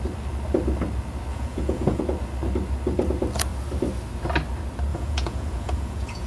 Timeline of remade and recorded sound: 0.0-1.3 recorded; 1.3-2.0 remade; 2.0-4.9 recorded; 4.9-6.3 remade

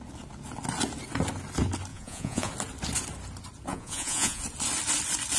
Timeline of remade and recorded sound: 0.0-1.9 recorded; 1.9-2.5 remade; 2.5-3.7 recorded; 3.7-4.4 remade; 4.4-5.4 recorded